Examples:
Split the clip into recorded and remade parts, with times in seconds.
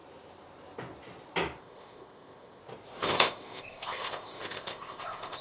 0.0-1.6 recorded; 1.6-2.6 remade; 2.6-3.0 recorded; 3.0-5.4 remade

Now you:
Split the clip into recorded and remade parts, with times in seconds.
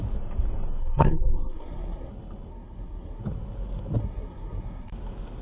0.0-0.8 recorded; 0.8-2.1 remade; 2.1-2.5 recorded; 2.5-3.2 remade; 3.2-4.0 recorded; 4.0-4.9 remade; 4.9-5.4 recorded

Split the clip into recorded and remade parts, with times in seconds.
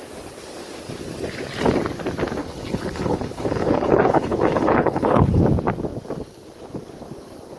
0.0-2.4 recorded; 2.4-5.4 remade; 5.4-7.6 recorded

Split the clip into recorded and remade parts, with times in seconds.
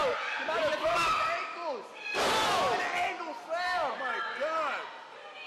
0.0-2.8 remade; 2.8-5.5 recorded